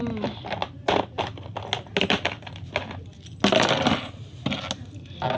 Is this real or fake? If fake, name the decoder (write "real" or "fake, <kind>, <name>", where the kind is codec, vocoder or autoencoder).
real